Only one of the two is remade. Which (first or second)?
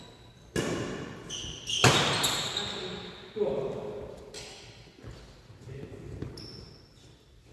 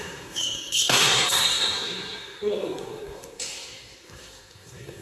second